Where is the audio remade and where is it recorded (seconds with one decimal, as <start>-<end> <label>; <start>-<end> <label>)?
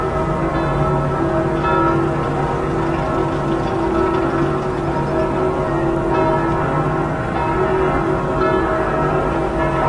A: 0.0-9.9 recorded